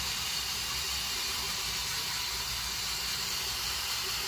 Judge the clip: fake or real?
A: real